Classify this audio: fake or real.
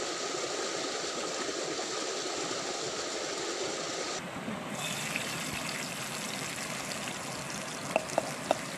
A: real